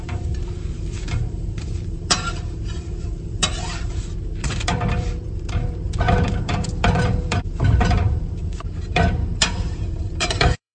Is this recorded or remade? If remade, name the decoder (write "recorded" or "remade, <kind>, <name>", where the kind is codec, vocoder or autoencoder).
remade, vocoder, BigVGAN v2